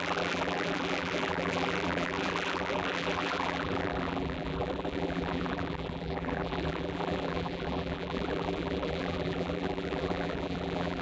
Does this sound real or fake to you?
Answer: fake